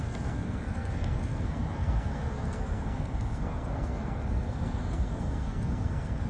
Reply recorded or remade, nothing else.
remade